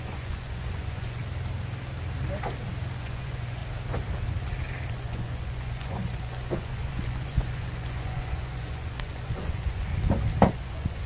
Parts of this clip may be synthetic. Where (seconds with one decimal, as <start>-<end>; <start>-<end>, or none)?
0.0-1.2; 3.0-3.6; 4.9-9.9; 10.5-11.1